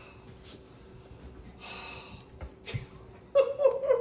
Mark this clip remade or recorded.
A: recorded